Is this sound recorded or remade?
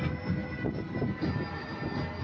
recorded